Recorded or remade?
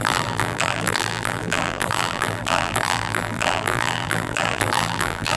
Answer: remade